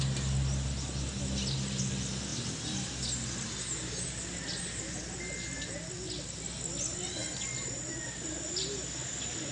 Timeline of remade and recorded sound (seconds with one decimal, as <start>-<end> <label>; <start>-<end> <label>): 0.0-9.5 recorded